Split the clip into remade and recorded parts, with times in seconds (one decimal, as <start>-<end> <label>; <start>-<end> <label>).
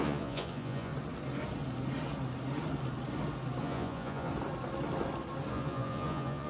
0.0-0.9 remade; 0.9-3.6 recorded; 3.6-4.3 remade; 4.3-5.5 recorded; 5.5-6.5 remade